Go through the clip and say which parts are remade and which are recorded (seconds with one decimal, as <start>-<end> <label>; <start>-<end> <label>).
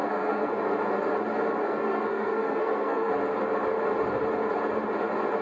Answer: 0.0-0.5 remade; 0.5-1.6 recorded; 1.6-3.1 remade; 3.1-5.4 recorded